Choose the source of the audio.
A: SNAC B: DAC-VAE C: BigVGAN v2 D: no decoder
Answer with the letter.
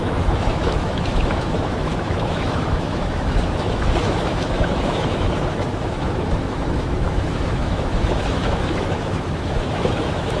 B